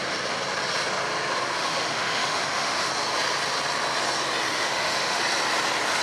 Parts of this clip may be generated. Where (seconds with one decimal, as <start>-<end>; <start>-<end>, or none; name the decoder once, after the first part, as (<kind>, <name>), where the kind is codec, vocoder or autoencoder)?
1.6-2.9 (autoencoder, DAC-VAE); 4.5-5.2

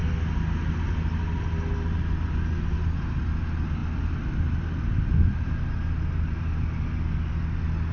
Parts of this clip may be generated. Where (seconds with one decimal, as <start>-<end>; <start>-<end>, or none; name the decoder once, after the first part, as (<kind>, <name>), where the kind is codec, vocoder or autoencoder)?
none

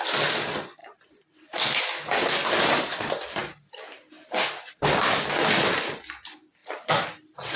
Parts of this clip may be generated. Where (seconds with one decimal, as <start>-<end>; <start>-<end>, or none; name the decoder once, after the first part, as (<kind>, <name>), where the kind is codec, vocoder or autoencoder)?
6.6-7.6 (vocoder, BigVGAN v2)